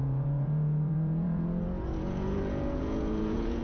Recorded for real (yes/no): no